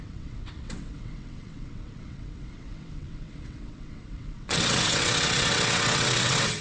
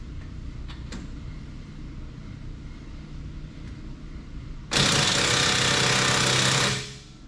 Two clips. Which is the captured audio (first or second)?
second